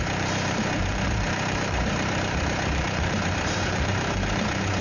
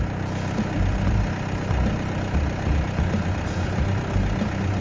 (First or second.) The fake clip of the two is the first